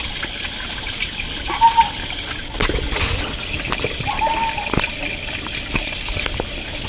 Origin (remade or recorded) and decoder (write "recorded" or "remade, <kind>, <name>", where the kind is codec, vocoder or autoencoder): recorded